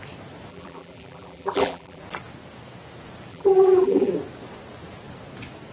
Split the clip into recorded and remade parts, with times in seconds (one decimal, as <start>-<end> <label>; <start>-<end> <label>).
0.0-0.5 recorded; 0.5-2.0 remade; 2.0-3.3 recorded; 3.3-4.1 remade; 4.1-5.7 recorded